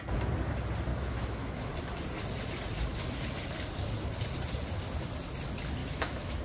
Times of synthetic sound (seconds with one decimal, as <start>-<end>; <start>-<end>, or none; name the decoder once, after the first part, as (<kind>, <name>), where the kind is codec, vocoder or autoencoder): 0.9-1.7 (autoencoder, DAC-VAE); 5.8-6.4